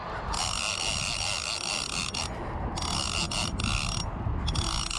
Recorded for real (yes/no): yes